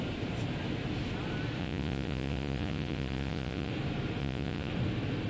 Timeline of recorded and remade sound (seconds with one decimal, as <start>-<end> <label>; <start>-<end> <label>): 0.0-1.6 recorded; 1.6-3.7 remade; 3.7-4.2 recorded; 4.2-4.7 remade; 4.7-5.3 recorded